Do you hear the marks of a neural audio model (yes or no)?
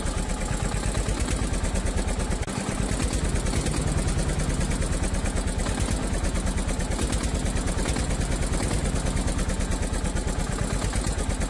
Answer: no